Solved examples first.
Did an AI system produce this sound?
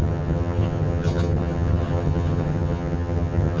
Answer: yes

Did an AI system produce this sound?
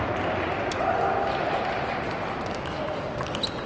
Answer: no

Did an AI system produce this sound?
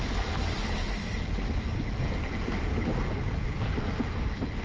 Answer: no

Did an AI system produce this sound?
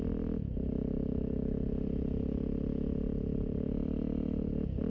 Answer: no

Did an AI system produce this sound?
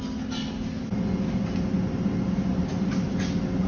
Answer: no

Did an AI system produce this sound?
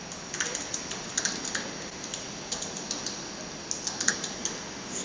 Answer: no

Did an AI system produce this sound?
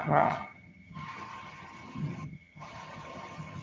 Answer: yes